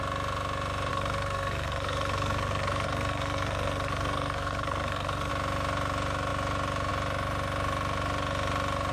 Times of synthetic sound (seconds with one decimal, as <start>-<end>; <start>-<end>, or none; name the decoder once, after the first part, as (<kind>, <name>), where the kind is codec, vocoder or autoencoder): 0.9-5.3 (codec, SNAC)

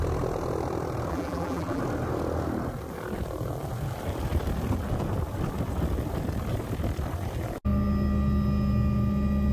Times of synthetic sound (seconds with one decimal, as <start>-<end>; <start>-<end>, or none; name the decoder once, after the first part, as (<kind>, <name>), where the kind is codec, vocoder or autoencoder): 1.1-1.8 (vocoder, BigVGAN v2)

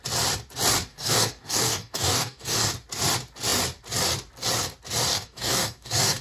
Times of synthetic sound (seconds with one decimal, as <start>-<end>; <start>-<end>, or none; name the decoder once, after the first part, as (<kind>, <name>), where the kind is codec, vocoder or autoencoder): 0.9-2.7 (codec, DAC); 5.1-6.2

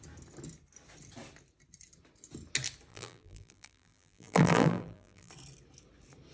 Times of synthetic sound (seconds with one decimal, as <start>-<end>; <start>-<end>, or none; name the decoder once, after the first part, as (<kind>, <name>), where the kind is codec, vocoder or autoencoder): 2.9-5.3 (vocoder, BigVGAN v2)

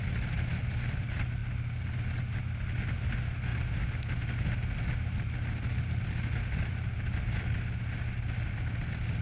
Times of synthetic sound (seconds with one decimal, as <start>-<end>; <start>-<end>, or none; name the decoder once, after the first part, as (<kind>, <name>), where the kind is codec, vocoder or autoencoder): none